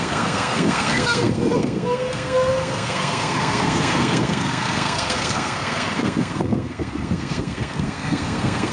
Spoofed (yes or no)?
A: yes